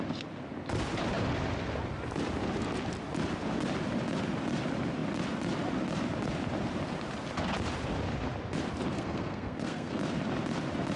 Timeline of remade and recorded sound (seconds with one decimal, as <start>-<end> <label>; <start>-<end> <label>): 0.0-8.9 recorded; 8.9-10.0 remade; 10.0-11.0 recorded